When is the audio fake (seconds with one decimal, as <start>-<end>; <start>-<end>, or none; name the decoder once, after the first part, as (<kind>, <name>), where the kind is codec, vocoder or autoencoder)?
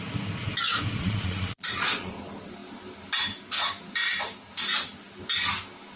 1.0-2.1 (vocoder, Vocos)